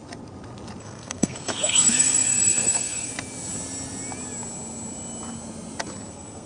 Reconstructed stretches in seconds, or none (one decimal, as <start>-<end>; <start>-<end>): 0.8-3.1; 6.1-6.5